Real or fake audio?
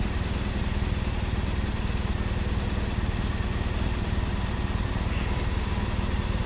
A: real